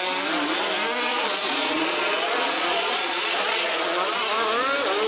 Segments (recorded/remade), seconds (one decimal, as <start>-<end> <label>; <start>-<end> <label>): 0.0-1.1 recorded; 1.1-4.2 remade; 4.2-5.1 recorded